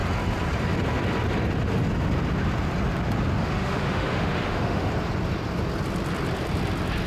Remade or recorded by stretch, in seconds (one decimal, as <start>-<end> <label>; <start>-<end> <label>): 0.0-3.4 recorded; 3.4-4.9 remade; 4.9-7.1 recorded